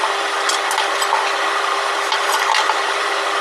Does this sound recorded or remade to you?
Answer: recorded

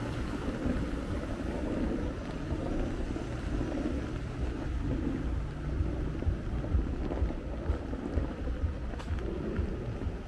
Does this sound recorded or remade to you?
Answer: recorded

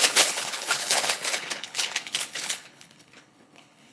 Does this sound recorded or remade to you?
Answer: remade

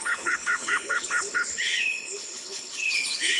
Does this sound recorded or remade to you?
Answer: remade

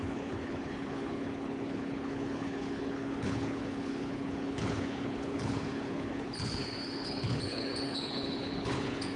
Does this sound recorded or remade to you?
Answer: remade